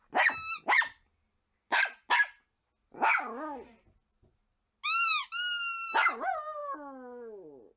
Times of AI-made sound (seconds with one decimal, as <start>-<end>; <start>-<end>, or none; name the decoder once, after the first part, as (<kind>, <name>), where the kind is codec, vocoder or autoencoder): none

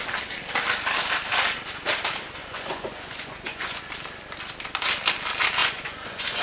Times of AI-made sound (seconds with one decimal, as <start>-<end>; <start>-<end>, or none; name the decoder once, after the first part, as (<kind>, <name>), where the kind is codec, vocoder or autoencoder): 2.4-3.8 (vocoder, Vocos); 5.6-6.4